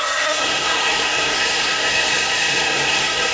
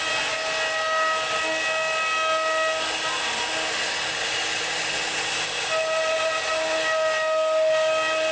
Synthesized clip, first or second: first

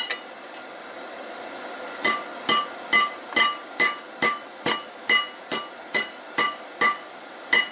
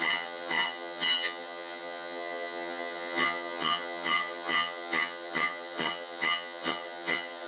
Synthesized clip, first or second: second